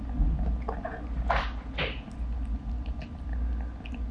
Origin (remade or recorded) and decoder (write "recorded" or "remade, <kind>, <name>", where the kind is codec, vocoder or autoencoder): recorded